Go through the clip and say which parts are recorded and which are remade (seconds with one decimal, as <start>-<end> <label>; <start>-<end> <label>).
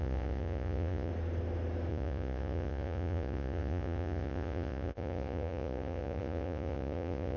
0.0-1.1 remade; 1.1-1.9 recorded; 1.9-7.4 remade